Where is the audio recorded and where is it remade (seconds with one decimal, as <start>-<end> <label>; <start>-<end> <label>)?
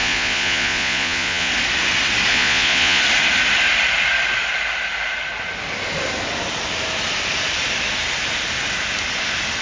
0.0-1.5 remade; 1.5-2.3 recorded; 2.3-3.0 remade; 3.0-9.6 recorded